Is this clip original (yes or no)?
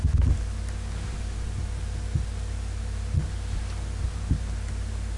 yes